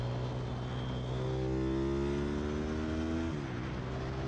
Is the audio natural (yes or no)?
yes